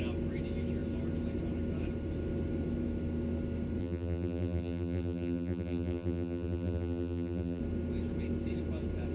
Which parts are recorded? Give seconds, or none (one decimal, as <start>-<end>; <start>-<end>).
0.0-3.8; 7.6-9.1